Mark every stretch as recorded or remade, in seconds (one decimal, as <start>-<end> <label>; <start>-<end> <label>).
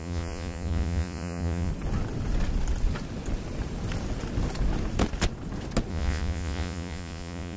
0.0-1.7 remade; 1.7-5.9 recorded; 5.9-7.6 remade